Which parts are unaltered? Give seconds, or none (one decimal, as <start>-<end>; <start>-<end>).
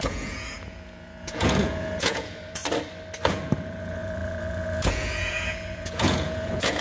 2.6-3.3